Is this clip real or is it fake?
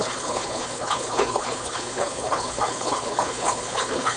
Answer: fake